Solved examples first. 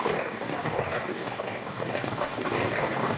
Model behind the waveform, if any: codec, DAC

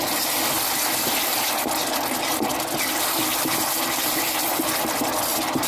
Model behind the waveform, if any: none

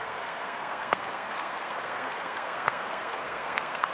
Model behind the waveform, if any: codec, SNAC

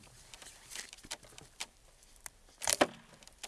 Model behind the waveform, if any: vocoder, BigVGAN v2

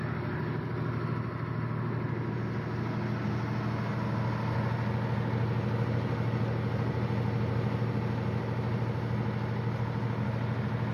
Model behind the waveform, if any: none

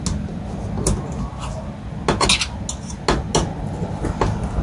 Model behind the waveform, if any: none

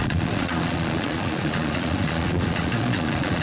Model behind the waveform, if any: vocoder, Vocos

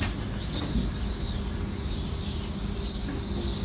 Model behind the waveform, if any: none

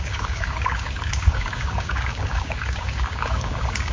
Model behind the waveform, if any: codec, DAC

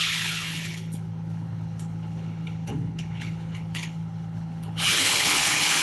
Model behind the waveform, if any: codec, HILCodec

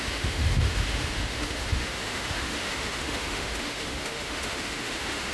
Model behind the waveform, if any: autoencoder, DAC-VAE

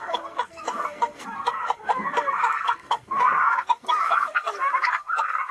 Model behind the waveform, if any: codec, SNAC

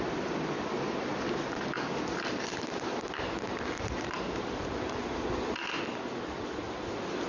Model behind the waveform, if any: none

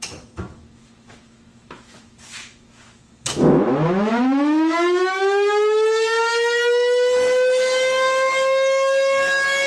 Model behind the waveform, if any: autoencoder, DAC-VAE